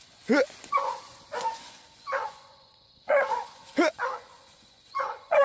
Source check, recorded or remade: remade